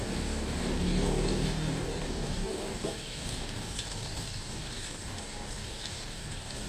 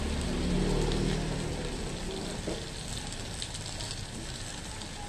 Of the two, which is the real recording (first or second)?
second